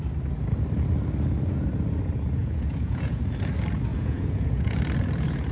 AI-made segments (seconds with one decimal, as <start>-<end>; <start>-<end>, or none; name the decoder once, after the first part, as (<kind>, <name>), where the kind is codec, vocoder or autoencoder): 2.4-3.2 (vocoder, Vocos); 3.9-4.8